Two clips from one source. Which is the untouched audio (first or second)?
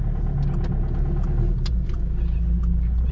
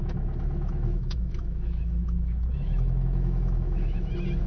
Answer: first